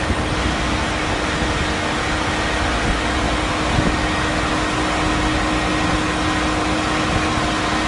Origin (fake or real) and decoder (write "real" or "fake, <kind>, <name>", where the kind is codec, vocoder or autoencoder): real